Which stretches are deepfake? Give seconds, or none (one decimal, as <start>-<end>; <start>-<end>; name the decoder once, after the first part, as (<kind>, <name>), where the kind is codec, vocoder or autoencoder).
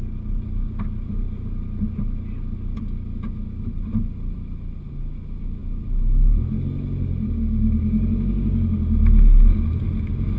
none